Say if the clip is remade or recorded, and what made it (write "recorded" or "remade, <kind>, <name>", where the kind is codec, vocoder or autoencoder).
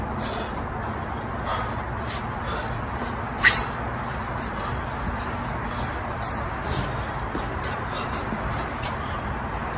recorded